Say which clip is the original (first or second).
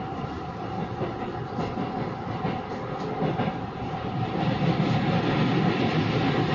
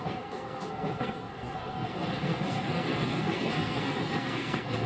first